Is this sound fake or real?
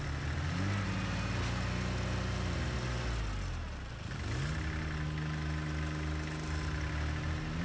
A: real